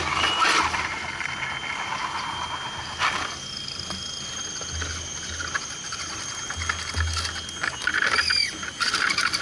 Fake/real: real